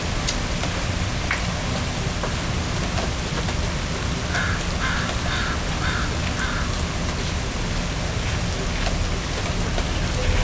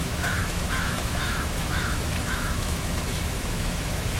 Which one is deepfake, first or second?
second